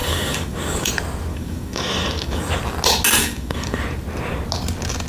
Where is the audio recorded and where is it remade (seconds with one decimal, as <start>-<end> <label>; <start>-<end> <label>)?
0.0-0.9 remade; 0.9-1.3 recorded; 1.3-2.5 remade; 2.5-3.2 recorded; 3.2-3.8 remade; 3.8-5.1 recorded